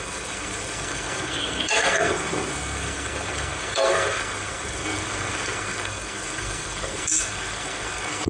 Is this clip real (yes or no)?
no